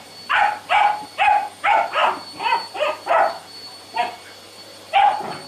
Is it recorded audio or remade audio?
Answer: remade